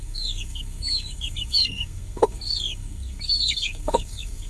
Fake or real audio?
fake